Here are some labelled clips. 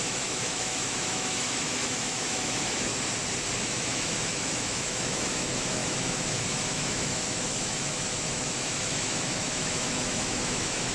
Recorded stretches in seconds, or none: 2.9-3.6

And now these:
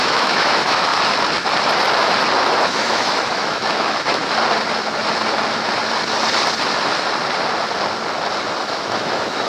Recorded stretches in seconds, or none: 0.9-2.5; 4.2-8.6

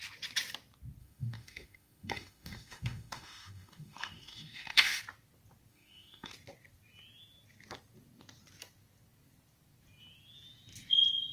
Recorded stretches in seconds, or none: 0.0-1.0; 5.0-5.7; 6.3-11.3

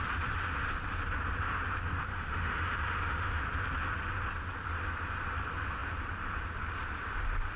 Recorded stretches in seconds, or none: 0.0-2.1; 3.4-7.6

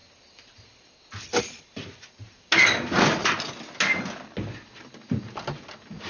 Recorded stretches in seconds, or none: 0.0-6.1

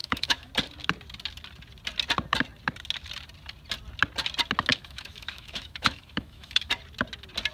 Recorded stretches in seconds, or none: 0.5-4.7; 6.7-7.5